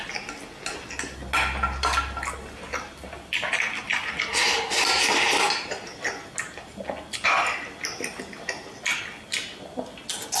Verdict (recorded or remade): recorded